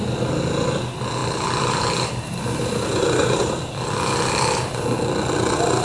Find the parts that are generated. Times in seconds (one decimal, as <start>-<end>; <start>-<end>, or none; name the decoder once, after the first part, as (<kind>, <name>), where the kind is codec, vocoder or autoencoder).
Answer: 1.2-4.7 (vocoder, BigVGAN v2)